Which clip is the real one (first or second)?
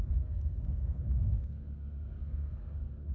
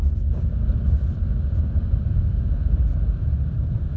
second